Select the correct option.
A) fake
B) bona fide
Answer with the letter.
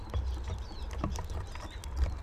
B